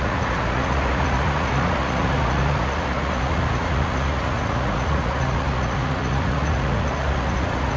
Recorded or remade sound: remade